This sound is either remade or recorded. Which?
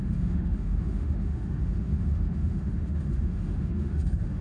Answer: remade